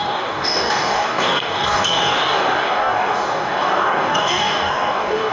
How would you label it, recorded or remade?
remade